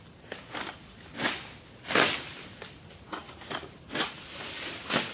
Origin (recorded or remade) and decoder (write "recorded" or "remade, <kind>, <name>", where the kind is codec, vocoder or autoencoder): recorded